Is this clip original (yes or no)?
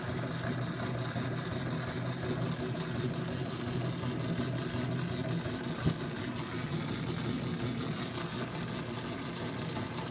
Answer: yes